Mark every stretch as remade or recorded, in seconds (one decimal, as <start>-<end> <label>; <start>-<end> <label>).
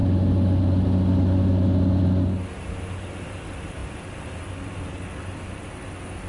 0.0-3.8 recorded; 3.8-4.7 remade; 4.7-6.3 recorded